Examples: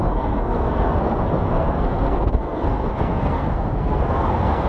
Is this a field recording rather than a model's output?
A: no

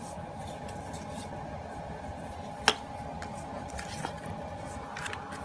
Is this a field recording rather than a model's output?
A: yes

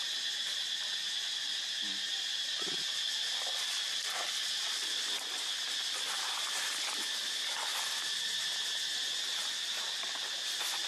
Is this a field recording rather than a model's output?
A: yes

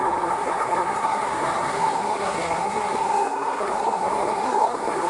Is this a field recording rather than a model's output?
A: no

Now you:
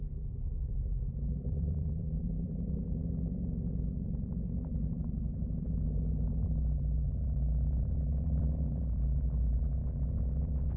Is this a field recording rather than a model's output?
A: no